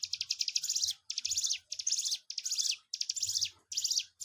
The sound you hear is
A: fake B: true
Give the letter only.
B